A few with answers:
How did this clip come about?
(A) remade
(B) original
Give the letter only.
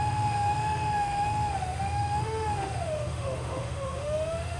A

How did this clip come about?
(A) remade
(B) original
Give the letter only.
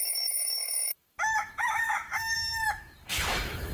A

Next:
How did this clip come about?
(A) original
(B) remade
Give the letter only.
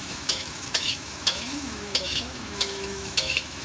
B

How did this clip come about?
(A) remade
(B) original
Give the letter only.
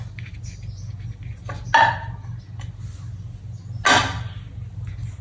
B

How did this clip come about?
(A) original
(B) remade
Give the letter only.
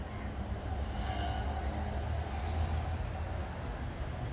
A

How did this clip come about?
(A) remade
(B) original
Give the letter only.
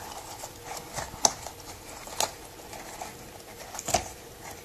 B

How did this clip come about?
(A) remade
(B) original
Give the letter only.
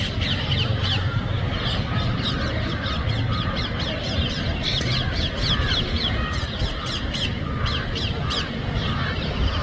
B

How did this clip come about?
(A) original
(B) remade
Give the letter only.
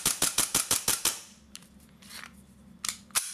A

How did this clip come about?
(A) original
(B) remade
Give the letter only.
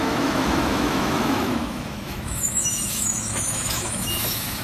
B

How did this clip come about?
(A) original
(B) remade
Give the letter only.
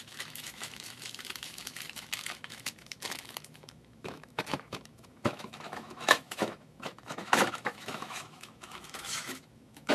B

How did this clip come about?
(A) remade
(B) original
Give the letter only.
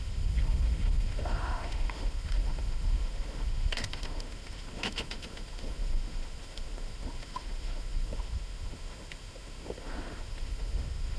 A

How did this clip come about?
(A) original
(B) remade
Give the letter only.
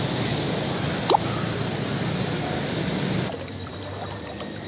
A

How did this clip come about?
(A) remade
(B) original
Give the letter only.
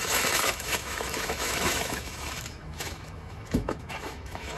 A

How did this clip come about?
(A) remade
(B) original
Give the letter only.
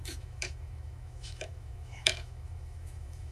A